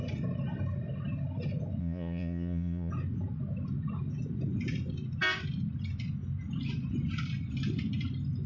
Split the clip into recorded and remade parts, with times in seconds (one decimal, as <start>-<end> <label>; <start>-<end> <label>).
0.0-1.8 recorded; 1.8-2.9 remade; 2.9-8.5 recorded